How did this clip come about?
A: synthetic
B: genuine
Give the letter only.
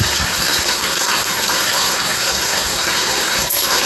A